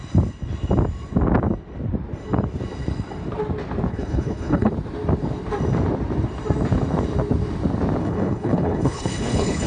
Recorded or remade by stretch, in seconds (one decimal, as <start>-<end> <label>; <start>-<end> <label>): 0.0-3.9 recorded; 3.9-4.7 remade; 4.7-8.0 recorded; 8.0-9.7 remade